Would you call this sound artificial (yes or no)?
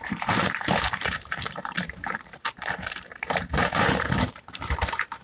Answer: yes